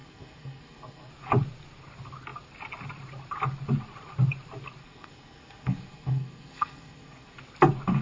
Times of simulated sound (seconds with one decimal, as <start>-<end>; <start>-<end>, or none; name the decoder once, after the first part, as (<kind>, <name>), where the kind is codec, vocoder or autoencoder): 0.0-1.1 (codec, SNAC); 4.8-7.4